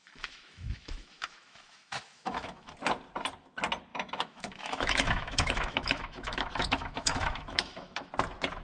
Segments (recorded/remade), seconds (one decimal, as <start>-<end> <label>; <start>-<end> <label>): 0.0-2.7 remade; 2.7-3.9 recorded; 3.9-8.1 remade; 8.1-8.6 recorded